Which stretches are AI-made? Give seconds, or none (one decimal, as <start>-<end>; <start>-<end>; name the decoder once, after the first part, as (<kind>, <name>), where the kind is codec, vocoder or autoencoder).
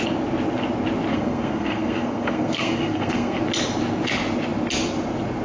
1.1-3.4 (codec, SNAC)